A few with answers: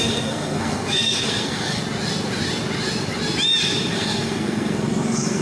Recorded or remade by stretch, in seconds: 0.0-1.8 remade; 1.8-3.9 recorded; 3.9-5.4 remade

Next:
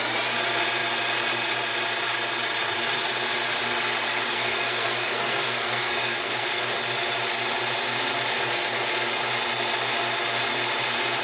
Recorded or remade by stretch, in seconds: 0.0-4.3 recorded; 4.3-6.6 remade; 6.6-11.2 recorded

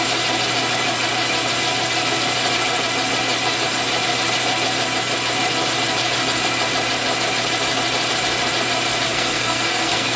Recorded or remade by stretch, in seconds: 0.0-9.1 recorded; 9.1-10.2 remade